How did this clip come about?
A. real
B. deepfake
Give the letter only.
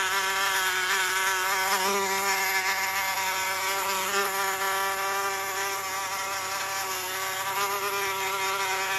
A